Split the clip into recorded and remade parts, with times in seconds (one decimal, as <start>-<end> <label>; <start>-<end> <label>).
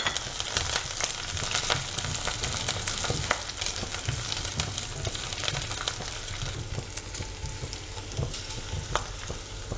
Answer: 0.0-3.9 recorded; 3.9-6.4 remade; 6.4-9.8 recorded